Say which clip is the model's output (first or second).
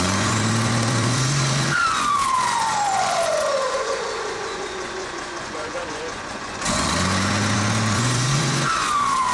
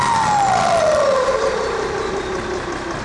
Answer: first